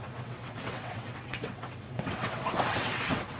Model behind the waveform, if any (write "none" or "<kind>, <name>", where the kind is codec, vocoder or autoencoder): vocoder, WaveNeXt